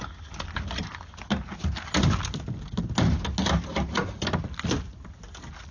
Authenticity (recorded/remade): recorded